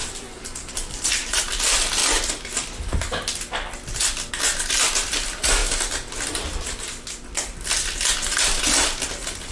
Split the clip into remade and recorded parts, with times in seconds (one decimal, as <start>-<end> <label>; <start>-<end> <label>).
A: 0.0-1.4 remade; 1.4-9.5 recorded